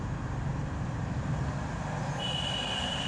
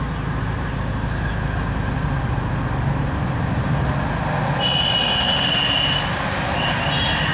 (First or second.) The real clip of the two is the second